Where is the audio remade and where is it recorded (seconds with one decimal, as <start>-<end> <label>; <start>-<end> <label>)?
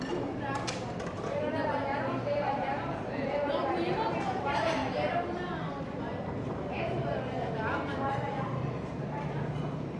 0.0-4.8 remade; 4.8-6.0 recorded; 6.0-7.1 remade; 7.1-8.1 recorded; 8.1-10.0 remade